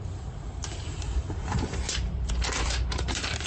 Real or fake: fake